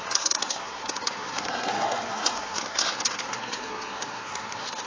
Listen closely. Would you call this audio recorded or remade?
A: remade